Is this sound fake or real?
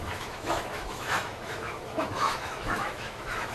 fake